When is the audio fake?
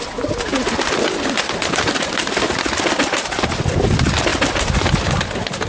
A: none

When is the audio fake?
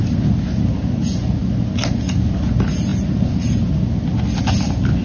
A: none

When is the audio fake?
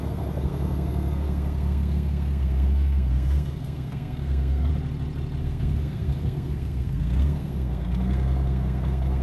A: 0.0-4.7 (codec, SNAC); 5.4-9.2